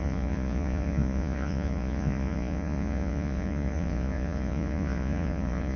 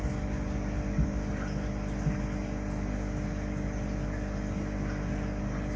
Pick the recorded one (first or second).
second